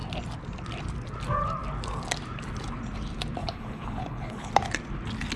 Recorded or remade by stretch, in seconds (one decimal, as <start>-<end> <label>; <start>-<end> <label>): 0.0-3.4 recorded; 3.4-4.5 remade; 4.5-5.4 recorded